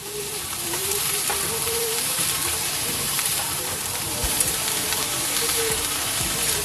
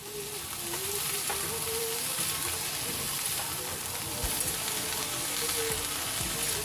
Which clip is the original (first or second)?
second